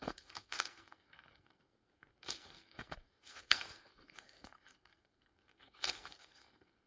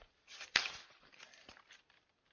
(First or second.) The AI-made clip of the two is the first